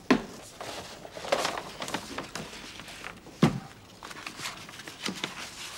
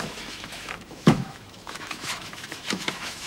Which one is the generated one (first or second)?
second